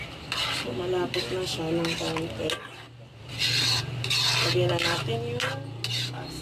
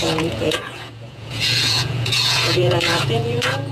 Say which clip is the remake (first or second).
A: second